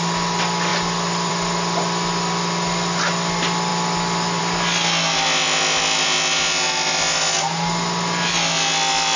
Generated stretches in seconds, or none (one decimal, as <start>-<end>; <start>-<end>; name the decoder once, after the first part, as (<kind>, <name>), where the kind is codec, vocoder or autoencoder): none